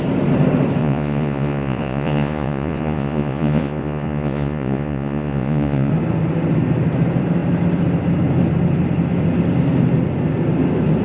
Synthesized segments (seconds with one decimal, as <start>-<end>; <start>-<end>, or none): 0.8-5.9